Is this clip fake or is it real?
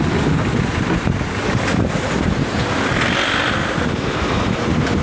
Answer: real